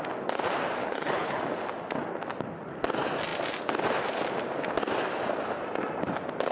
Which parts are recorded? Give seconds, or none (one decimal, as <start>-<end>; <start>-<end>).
0.0-0.8; 1.4-6.5